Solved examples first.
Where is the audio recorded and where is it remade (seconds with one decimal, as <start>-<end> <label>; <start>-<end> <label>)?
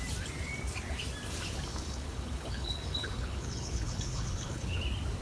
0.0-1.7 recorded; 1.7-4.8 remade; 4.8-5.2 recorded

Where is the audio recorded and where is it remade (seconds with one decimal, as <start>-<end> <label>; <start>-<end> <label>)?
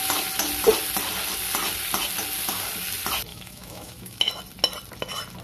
0.0-3.3 recorded; 3.3-4.3 remade; 4.3-5.4 recorded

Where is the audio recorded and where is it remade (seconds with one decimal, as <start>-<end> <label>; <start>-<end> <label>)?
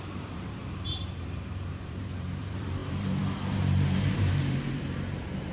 0.0-5.5 remade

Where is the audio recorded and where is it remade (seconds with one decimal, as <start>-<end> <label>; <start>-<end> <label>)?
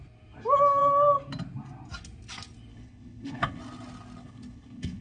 0.0-2.7 recorded; 2.7-3.6 remade; 3.6-4.2 recorded; 4.2-5.0 remade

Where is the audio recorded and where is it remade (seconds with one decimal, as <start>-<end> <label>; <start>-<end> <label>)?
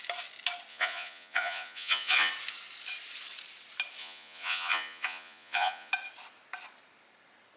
0.0-0.7 recorded; 0.7-2.3 remade; 2.3-4.0 recorded; 4.0-5.9 remade; 5.9-7.6 recorded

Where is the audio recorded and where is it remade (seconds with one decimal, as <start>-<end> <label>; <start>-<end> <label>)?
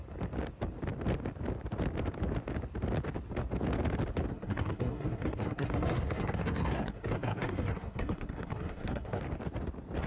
0.0-4.3 recorded; 4.3-9.2 remade; 9.2-10.1 recorded